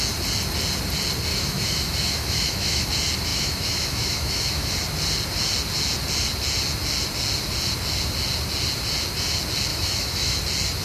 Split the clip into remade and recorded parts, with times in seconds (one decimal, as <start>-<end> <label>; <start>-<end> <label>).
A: 0.0-1.3 recorded; 1.3-2.9 remade; 2.9-3.3 recorded; 3.3-4.7 remade; 4.7-9.7 recorded; 9.7-10.4 remade; 10.4-10.8 recorded